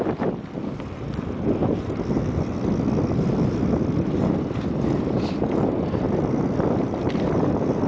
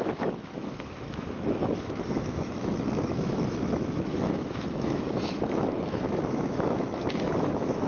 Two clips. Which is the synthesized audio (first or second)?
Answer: second